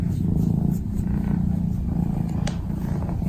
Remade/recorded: recorded